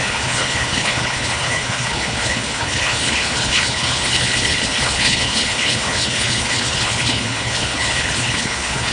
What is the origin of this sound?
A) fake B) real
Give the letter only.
A